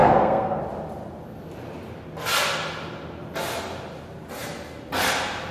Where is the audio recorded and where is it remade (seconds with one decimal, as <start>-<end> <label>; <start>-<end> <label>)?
0.0-0.6 remade; 0.6-5.5 recorded